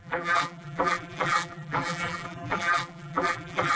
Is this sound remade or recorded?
remade